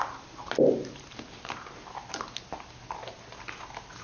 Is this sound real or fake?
real